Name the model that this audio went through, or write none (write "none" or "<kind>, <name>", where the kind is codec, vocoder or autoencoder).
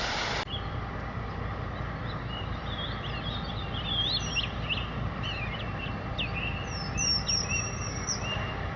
none